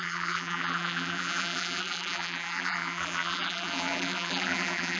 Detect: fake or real fake